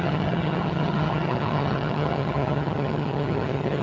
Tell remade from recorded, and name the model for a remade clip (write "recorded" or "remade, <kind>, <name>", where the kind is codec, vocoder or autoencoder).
remade, vocoder, HiFi-GAN